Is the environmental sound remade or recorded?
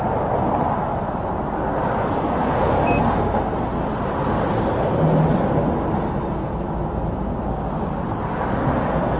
recorded